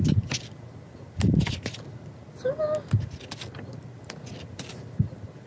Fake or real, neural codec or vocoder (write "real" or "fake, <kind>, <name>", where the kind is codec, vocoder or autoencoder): real